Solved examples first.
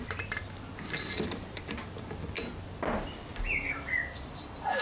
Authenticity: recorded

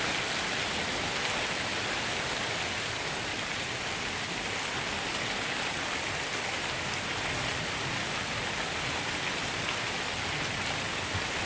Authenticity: recorded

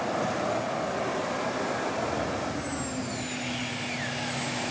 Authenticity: recorded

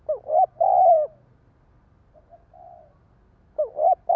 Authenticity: recorded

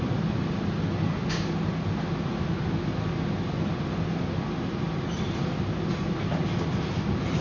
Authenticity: recorded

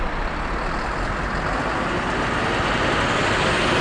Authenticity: recorded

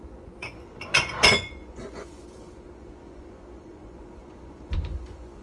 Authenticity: remade